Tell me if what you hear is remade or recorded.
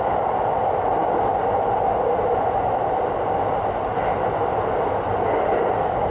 recorded